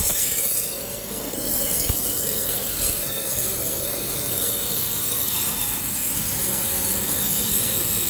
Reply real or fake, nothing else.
fake